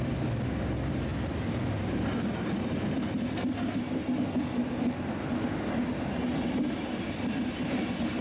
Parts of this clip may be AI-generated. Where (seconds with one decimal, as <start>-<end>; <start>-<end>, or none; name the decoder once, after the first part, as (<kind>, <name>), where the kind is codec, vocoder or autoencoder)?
none